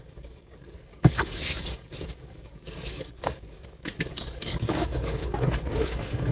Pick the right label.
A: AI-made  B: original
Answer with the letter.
A